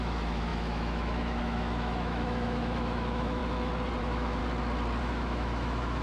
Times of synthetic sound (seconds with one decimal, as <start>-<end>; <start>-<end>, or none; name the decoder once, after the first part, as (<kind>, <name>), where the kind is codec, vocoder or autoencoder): 0.0-3.4 (autoencoder, DAC-VAE); 4.0-4.4; 5.0-6.0